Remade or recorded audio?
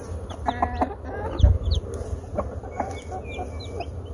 recorded